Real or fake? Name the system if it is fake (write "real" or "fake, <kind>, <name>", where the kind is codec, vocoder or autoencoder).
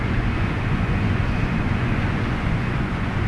fake, vocoder, Vocos